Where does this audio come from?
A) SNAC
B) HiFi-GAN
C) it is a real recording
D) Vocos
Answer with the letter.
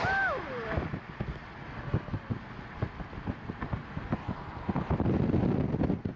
C